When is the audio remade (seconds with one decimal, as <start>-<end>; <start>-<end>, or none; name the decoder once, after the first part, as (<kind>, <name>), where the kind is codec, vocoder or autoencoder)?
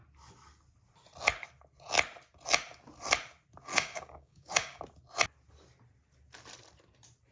3.7-4.8 (codec, DAC)